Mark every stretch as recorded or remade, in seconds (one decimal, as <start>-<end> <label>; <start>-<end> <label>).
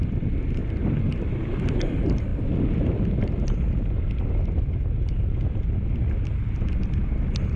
0.0-7.6 recorded